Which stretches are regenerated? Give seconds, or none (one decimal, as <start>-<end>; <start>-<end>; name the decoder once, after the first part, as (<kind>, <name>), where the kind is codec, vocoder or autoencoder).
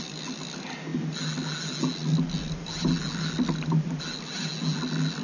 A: none